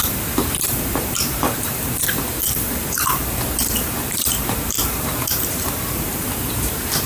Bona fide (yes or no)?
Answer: no